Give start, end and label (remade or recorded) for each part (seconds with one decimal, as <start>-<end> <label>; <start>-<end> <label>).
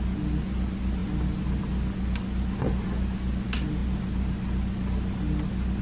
0.0-5.8 recorded